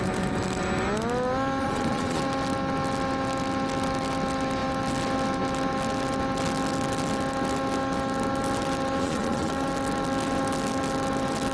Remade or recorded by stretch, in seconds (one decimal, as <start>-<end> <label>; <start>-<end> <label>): 0.0-1.6 recorded; 1.6-2.2 remade; 2.2-9.0 recorded; 9.0-9.5 remade; 9.5-11.5 recorded